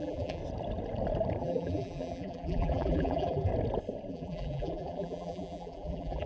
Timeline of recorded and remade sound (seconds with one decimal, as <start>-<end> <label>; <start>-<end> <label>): 0.0-0.4 remade; 0.4-1.4 recorded; 1.4-3.5 remade; 3.5-4.1 recorded; 4.1-6.3 remade